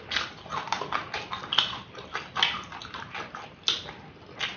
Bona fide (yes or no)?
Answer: yes